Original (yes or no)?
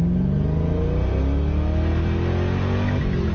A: yes